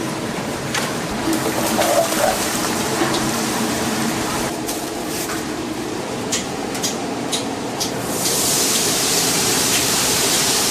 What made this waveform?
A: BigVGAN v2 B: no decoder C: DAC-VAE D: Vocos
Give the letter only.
A